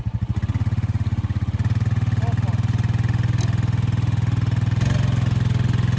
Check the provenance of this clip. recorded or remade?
recorded